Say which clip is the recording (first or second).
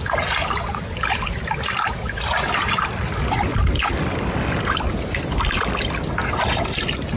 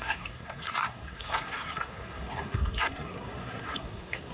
first